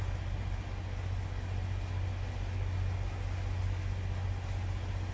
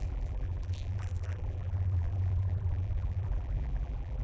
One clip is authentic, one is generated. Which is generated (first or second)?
second